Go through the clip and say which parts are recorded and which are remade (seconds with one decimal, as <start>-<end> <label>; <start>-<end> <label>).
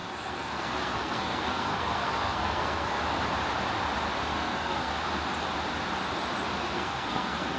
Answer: 0.0-3.0 remade; 3.0-4.3 recorded; 4.3-4.9 remade; 4.9-6.6 recorded; 6.6-7.6 remade